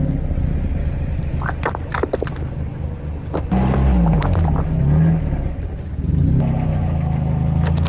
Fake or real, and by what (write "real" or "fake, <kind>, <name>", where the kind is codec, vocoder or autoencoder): real